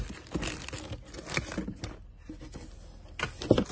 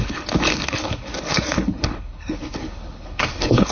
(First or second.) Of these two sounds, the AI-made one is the second